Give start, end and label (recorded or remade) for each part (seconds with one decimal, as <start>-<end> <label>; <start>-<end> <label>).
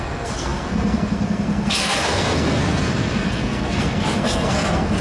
0.0-5.0 remade